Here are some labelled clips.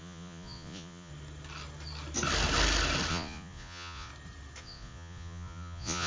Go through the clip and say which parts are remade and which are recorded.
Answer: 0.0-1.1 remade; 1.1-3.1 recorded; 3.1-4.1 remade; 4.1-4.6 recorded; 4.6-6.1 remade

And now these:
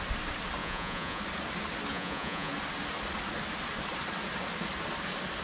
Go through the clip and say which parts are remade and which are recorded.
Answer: 0.0-0.6 recorded; 0.6-1.2 remade; 1.2-1.9 recorded; 1.9-2.5 remade; 2.5-5.4 recorded

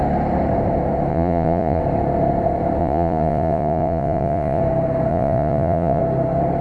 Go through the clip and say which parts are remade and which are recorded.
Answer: 0.0-1.1 recorded; 1.1-1.8 remade; 1.8-2.8 recorded; 2.8-4.6 remade; 4.6-5.1 recorded; 5.1-6.0 remade; 6.0-6.6 recorded

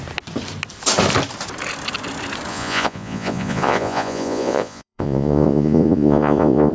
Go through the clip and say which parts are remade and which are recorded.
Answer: 0.0-2.5 recorded; 2.5-6.7 remade

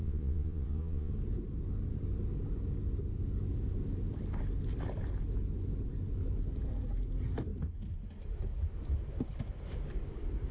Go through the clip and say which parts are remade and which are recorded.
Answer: 0.0-1.1 remade; 1.1-10.5 recorded